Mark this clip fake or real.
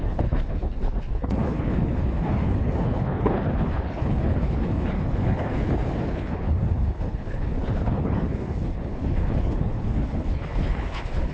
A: fake